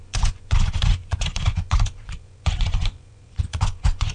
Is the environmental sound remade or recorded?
remade